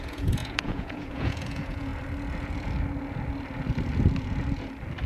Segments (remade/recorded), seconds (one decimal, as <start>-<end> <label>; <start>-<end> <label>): 0.0-1.9 remade; 1.9-5.1 recorded